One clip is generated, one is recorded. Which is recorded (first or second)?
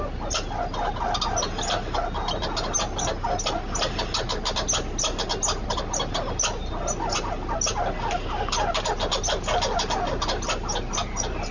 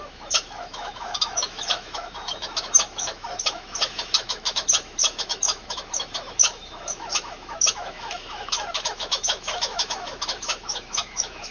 first